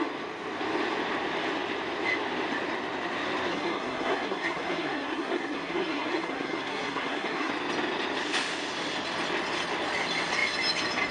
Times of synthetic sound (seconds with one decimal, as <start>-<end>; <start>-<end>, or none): 3.5-7.5